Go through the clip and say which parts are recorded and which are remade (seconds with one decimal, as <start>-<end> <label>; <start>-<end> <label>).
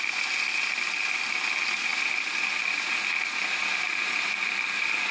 0.0-5.1 recorded